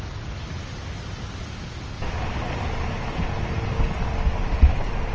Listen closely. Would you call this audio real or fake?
real